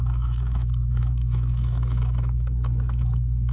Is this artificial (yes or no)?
yes